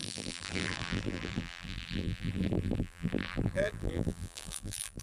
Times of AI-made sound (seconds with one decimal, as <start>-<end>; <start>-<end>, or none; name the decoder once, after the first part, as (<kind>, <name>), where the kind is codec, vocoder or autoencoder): 0.0-5.0 (vocoder, BigVGAN v2)